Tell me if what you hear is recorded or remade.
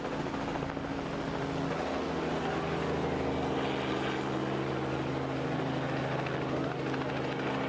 recorded